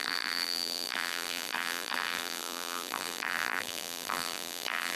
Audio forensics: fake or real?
fake